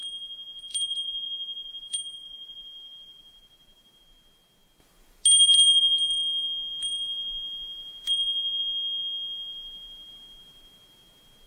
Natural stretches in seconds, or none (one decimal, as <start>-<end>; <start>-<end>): 0.0-0.7; 4.0-11.5

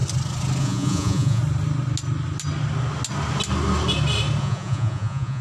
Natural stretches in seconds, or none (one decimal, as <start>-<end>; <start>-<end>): 0.0-0.6; 1.4-4.4

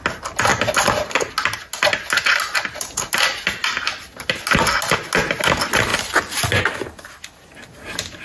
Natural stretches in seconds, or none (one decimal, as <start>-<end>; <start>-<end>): 0.0-8.2

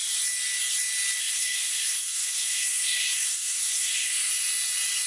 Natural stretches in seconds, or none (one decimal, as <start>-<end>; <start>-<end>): 0.0-1.2; 4.3-5.1

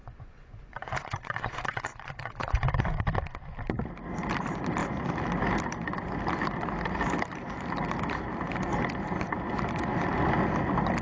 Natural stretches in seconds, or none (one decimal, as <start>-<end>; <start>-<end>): 3.0-11.0

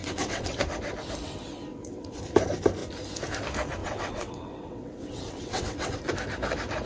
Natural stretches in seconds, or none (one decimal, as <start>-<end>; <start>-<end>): 0.6-1.7; 2.2-3.8; 6.0-6.9

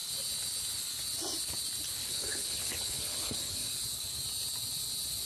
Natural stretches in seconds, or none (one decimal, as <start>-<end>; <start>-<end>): 0.0-2.0; 3.7-5.3